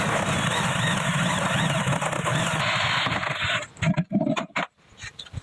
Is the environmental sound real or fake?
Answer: real